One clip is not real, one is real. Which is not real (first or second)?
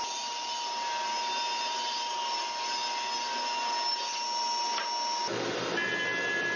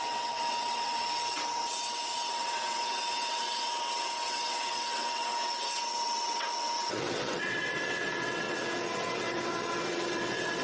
second